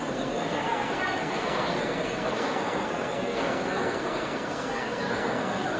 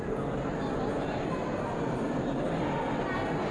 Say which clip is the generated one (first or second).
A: first